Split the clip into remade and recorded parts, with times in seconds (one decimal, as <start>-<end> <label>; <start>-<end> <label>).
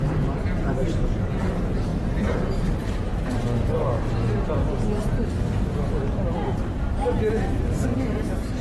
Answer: 0.0-3.1 remade; 3.1-6.0 recorded; 6.0-8.6 remade